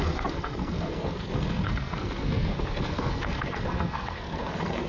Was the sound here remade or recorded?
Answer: remade